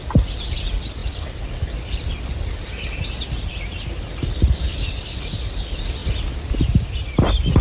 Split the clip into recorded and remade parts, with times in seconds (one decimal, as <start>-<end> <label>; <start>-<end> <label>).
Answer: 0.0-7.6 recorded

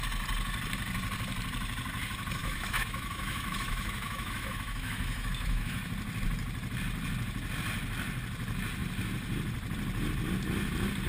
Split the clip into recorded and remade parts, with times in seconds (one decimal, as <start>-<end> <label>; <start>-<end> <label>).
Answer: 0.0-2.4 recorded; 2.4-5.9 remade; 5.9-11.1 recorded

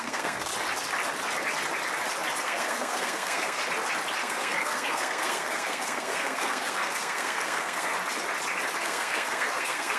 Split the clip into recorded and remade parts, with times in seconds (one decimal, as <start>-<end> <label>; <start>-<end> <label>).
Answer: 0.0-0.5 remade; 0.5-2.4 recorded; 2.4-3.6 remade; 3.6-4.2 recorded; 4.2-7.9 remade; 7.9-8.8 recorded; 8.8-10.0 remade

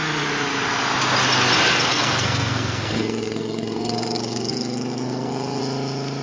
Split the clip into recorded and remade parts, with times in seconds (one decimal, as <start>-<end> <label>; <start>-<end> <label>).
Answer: 0.0-1.9 recorded; 1.9-5.6 remade; 5.6-6.2 recorded